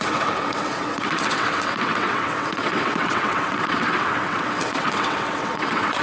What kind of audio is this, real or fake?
fake